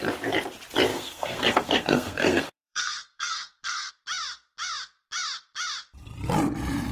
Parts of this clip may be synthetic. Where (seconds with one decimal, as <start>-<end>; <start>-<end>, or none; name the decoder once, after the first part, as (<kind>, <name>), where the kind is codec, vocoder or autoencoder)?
0.9-3.9 (codec, SNAC)